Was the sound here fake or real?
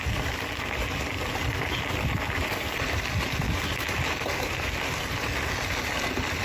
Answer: real